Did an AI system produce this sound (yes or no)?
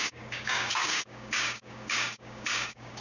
yes